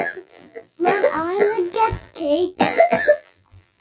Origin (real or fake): fake